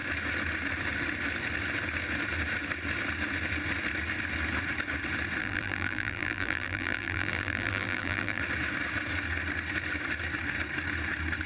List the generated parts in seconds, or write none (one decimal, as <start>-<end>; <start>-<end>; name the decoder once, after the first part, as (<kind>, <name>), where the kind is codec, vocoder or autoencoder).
5.4-8.4 (vocoder, BigVGAN v2)